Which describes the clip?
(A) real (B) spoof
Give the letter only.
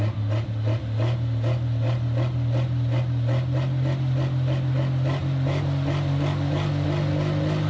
A